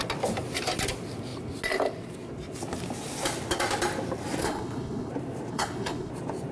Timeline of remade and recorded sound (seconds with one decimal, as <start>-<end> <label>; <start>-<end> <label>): 0.0-4.4 recorded; 4.4-5.1 remade; 5.1-5.5 recorded; 5.5-6.1 remade; 6.1-6.5 recorded